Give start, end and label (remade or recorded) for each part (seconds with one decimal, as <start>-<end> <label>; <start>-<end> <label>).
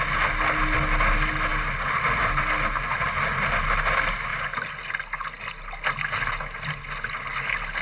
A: 0.0-7.8 recorded